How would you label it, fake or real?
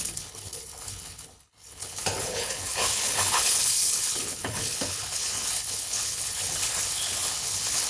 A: fake